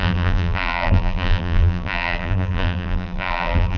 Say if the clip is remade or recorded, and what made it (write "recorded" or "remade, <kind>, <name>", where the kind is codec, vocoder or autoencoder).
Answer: remade, vocoder, BigVGAN v2